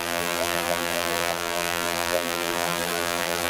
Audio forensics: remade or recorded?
remade